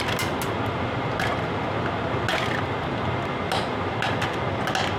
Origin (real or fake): real